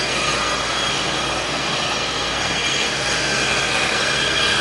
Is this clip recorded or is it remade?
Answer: remade